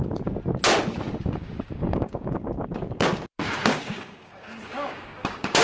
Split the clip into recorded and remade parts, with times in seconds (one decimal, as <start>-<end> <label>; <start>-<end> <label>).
0.0-1.2 recorded; 1.2-5.6 remade